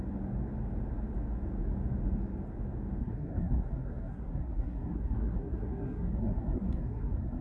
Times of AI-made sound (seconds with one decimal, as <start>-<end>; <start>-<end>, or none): 3.0-7.4